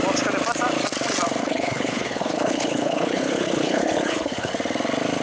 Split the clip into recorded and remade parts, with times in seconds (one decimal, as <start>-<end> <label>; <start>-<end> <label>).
0.0-1.4 recorded; 1.4-4.5 remade; 4.5-5.2 recorded